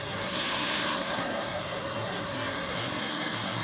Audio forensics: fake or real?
fake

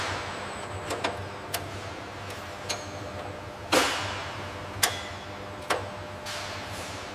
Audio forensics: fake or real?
real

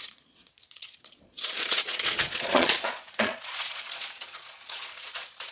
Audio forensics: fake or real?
fake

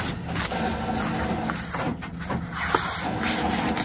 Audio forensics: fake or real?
real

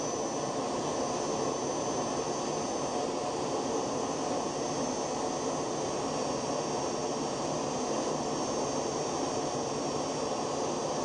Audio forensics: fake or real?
real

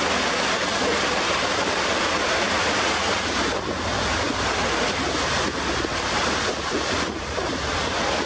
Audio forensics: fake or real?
real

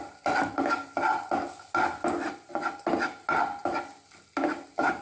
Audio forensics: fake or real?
real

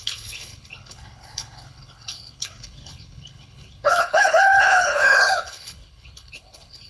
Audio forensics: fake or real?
fake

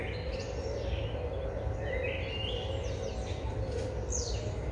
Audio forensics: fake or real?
real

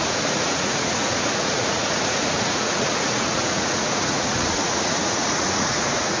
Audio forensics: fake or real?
fake